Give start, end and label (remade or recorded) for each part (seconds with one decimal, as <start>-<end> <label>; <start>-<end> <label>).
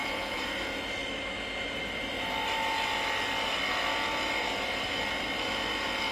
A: 0.0-0.5 remade; 0.5-6.1 recorded